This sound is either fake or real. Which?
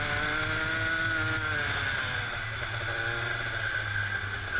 real